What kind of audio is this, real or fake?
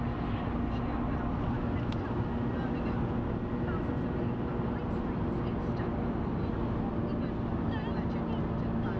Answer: real